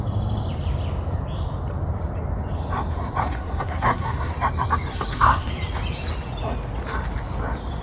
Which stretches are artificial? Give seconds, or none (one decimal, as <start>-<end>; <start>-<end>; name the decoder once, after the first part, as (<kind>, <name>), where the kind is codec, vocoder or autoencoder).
3.2-4.3 (codec, SNAC); 4.9-5.5